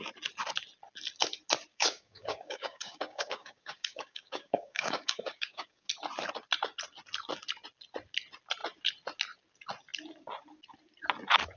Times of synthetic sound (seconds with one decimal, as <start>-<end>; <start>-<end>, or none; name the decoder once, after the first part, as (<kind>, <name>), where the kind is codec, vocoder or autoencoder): 1.7-5.9 (codec, DAC)